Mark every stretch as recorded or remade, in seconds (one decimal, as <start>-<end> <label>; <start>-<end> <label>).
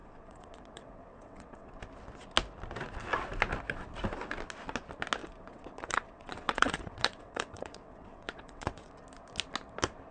0.0-1.8 remade; 1.8-5.2 recorded; 5.2-8.9 remade; 8.9-10.1 recorded